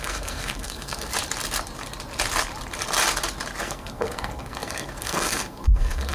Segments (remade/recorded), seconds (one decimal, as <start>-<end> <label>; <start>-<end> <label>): 0.0-1.1 remade; 1.1-3.6 recorded; 3.6-6.1 remade

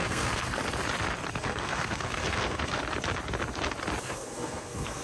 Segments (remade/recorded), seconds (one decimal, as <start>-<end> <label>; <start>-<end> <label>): 0.0-0.6 remade; 0.6-1.4 recorded; 1.4-2.8 remade; 2.8-4.0 recorded; 4.0-5.0 remade

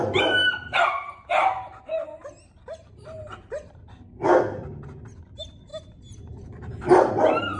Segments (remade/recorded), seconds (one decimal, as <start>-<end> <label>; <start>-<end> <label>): 0.0-5.7 recorded; 5.7-7.6 remade

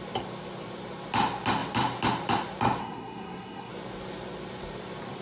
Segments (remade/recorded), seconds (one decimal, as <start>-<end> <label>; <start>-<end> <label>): 0.0-2.8 recorded; 2.8-3.7 remade; 3.7-5.2 recorded

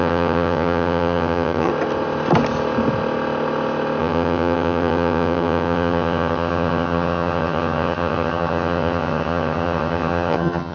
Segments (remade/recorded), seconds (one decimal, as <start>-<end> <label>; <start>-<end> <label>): 0.0-1.7 remade; 1.7-4.0 recorded; 4.0-10.7 remade

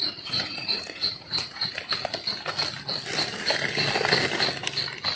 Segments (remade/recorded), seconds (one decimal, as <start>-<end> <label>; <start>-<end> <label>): 0.0-1.7 remade; 1.7-5.2 recorded

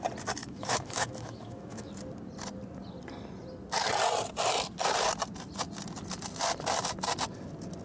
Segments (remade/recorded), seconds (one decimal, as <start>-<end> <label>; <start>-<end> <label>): 0.0-0.4 recorded; 0.4-1.9 remade; 1.9-7.8 recorded